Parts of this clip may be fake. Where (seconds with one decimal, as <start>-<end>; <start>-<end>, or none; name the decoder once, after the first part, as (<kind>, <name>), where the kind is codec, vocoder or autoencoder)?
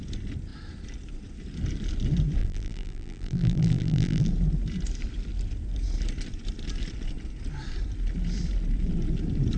2.4-4.3 (vocoder, BigVGAN v2)